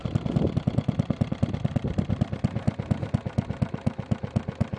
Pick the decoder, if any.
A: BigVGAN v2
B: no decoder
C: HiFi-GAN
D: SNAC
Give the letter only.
B